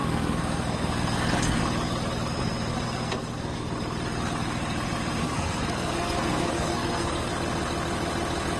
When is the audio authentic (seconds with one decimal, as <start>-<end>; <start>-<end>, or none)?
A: 1.6-2.7; 3.6-5.2; 7.3-8.6